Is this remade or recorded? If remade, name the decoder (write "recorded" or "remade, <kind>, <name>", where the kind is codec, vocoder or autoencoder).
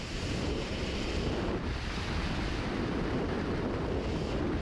recorded